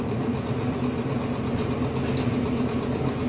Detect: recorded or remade recorded